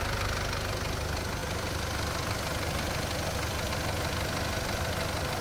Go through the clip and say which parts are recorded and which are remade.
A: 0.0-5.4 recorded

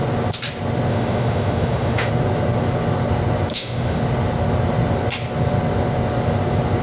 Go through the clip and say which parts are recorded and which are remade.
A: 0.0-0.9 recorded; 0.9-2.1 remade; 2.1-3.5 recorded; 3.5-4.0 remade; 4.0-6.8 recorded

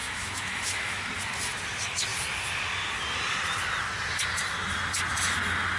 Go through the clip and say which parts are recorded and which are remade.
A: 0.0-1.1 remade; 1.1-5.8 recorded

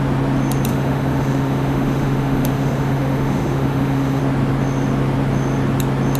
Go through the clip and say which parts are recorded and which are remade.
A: 0.0-0.7 recorded; 0.7-4.2 remade; 4.2-6.2 recorded

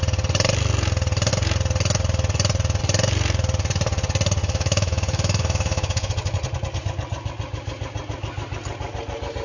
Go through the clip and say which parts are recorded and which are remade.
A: 0.0-4.4 recorded; 4.4-6.1 remade; 6.1-9.4 recorded

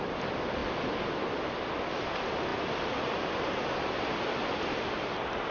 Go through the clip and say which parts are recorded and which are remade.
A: 0.0-5.5 recorded

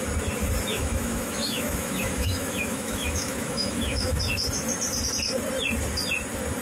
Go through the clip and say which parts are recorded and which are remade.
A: 0.0-0.7 recorded; 0.7-4.2 remade; 4.2-6.6 recorded